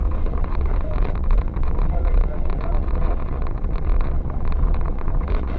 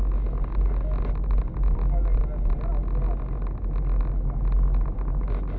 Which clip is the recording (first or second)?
second